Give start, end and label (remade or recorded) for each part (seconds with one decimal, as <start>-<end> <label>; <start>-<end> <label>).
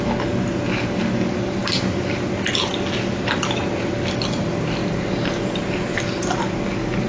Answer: 0.0-7.1 recorded